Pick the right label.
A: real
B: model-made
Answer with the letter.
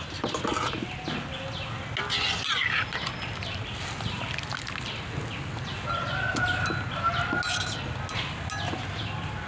A